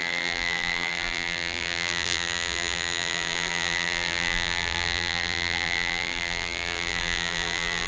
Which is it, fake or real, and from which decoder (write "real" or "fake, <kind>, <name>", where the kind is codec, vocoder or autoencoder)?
fake, vocoder, BigVGAN v2